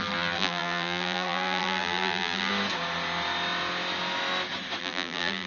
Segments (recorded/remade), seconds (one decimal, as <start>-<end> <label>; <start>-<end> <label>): 0.0-2.5 remade; 2.5-4.8 recorded; 4.8-5.5 remade